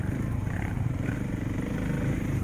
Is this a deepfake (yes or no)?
yes